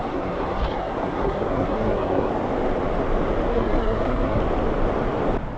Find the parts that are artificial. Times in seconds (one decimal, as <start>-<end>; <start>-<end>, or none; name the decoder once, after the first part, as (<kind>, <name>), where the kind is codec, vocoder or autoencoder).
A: 0.0-2.3 (codec, SNAC); 3.5-4.4